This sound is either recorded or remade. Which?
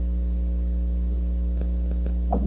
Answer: recorded